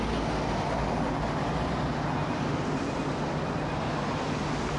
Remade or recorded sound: recorded